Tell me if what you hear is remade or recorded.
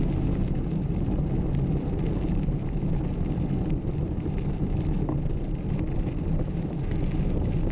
recorded